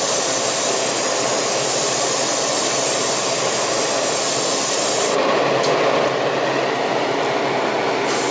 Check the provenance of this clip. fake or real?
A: real